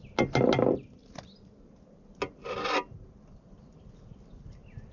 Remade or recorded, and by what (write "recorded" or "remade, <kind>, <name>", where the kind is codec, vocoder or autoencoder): recorded